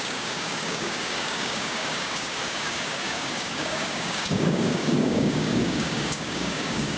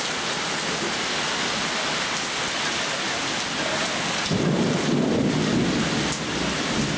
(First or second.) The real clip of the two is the second